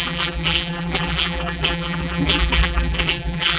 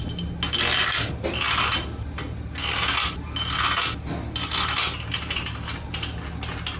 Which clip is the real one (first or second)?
second